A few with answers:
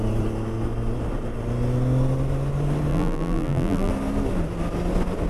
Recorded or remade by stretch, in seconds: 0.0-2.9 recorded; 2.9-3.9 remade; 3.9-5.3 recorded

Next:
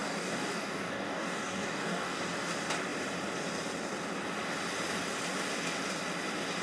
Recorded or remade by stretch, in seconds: 0.0-2.2 remade; 2.2-6.6 recorded

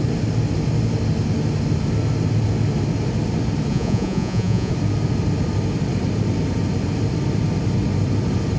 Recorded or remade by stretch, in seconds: 0.0-3.7 recorded; 3.7-4.7 remade; 4.7-8.6 recorded

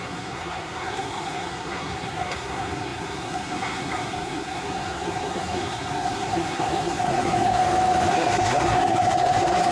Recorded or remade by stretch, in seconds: 0.0-7.6 remade; 7.6-8.1 recorded; 8.1-9.7 remade

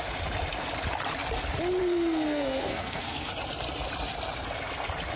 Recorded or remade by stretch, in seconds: 0.0-1.8 recorded; 1.8-3.3 remade; 3.3-5.2 recorded

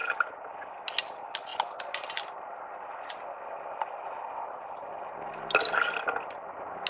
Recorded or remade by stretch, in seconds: 0.0-6.9 recorded

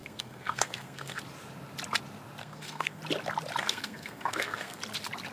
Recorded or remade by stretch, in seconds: 0.0-1.2 remade; 1.2-2.4 recorded; 2.4-3.0 remade; 3.0-3.6 recorded; 3.6-4.8 remade; 4.8-5.3 recorded